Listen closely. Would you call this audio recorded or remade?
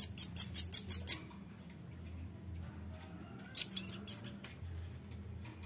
recorded